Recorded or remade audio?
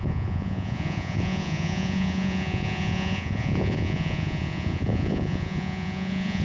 remade